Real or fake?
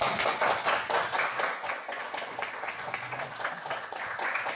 fake